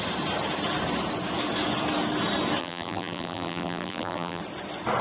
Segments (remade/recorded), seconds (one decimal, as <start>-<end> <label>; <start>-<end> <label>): 0.0-2.6 recorded; 2.6-4.4 remade; 4.4-5.0 recorded